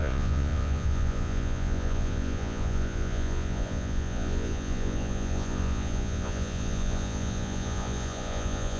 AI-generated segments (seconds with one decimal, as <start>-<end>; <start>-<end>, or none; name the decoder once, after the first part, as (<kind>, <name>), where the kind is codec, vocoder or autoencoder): 0.0-8.8 (vocoder, Vocos)

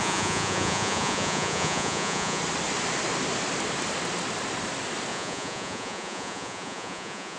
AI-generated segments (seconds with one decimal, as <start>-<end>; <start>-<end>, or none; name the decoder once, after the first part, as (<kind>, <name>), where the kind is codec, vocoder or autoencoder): 0.0-2.4 (vocoder, Vocos); 5.1-7.4

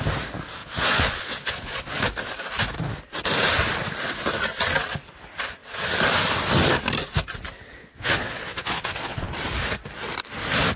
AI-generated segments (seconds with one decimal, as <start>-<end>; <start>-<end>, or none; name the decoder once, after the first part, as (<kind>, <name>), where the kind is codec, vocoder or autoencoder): 0.6-1.8 (vocoder, Vocos); 7.8-9.3

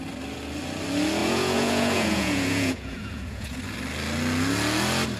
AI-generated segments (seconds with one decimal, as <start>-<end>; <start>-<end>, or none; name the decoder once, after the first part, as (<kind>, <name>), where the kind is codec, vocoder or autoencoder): 1.2-3.6 (vocoder, Vocos)

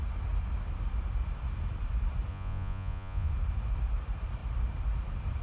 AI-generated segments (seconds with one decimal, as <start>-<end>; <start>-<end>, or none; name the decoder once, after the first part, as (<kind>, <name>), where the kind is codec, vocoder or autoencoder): 2.3-3.3 (vocoder, Vocos)